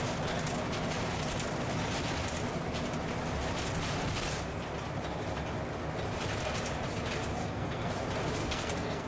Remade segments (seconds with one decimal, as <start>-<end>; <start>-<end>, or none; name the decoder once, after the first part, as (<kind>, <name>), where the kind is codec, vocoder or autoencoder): 7.4-7.9 (codec, SNAC); 8.4-9.1